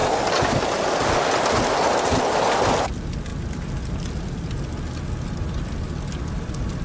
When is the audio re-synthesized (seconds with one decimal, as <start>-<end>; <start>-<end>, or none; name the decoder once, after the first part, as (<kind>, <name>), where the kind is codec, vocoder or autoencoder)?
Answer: none